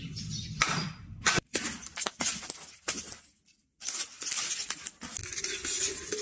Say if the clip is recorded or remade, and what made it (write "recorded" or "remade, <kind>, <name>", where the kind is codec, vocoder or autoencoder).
recorded